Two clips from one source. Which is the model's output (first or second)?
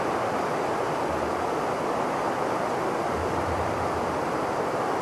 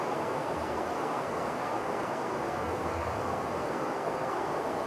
second